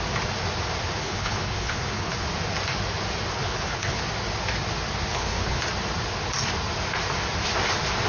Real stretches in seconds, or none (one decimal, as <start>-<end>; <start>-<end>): 0.0-1.0; 2.3-3.3; 4.0-5.1; 5.6-8.1